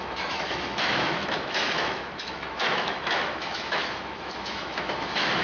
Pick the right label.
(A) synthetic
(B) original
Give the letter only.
A